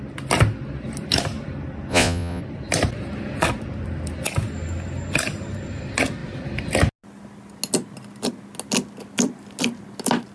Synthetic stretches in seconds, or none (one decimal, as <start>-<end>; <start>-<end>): 1.9-2.4